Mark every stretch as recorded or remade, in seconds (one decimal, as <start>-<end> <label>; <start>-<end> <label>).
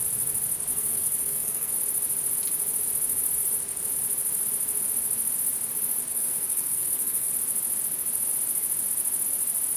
0.0-0.7 recorded; 0.7-1.7 remade; 1.7-6.1 recorded; 6.1-7.3 remade; 7.3-9.8 recorded